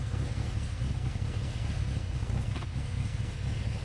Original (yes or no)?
no